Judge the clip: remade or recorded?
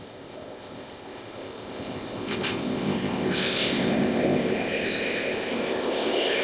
remade